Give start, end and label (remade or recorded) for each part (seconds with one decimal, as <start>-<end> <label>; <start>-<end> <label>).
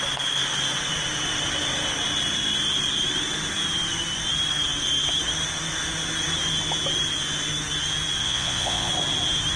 0.0-8.2 recorded; 8.2-8.9 remade; 8.9-9.6 recorded